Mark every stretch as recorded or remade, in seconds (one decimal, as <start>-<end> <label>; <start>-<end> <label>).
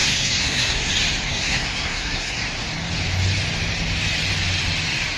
0.0-0.9 remade; 0.9-1.3 recorded; 1.3-2.4 remade; 2.4-5.2 recorded